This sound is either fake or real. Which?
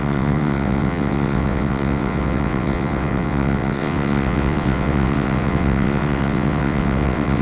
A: fake